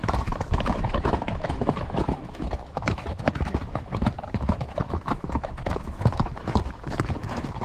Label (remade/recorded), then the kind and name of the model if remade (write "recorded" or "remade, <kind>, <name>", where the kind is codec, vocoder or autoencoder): remade, autoencoder, DAC-VAE